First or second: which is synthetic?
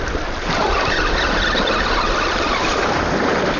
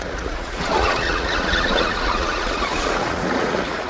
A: second